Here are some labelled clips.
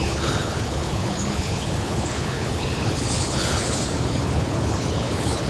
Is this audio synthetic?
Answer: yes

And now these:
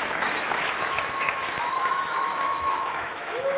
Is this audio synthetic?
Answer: yes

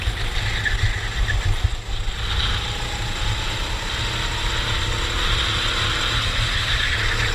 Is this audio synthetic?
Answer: no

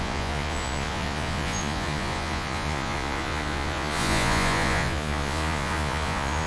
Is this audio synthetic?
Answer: yes